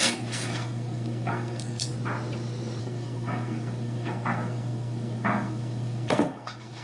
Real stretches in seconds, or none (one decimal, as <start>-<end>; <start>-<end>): 1.9-2.8